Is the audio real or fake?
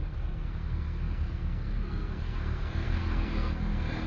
fake